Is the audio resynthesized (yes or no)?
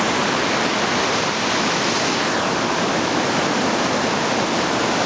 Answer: no